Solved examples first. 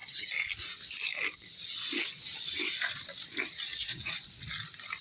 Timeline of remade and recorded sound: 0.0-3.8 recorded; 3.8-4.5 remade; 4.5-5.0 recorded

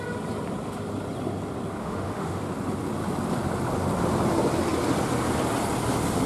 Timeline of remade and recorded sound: 0.0-1.8 recorded; 1.8-2.4 remade; 2.4-6.3 recorded